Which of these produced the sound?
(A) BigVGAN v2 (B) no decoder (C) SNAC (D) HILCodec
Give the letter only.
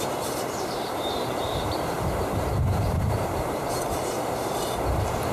A